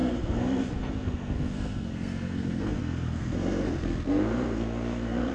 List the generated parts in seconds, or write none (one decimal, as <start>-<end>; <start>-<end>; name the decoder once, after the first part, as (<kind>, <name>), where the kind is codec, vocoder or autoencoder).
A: 0.0-5.3 (codec, SNAC)